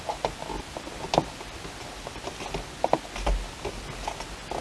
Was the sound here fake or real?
real